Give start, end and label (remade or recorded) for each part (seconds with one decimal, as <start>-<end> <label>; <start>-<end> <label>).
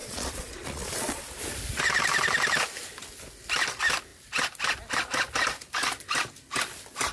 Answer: 0.0-1.2 remade; 1.2-7.1 recorded